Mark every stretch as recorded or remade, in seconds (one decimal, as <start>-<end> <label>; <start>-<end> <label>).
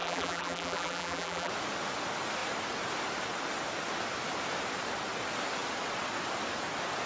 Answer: 0.0-1.5 remade; 1.5-7.1 recorded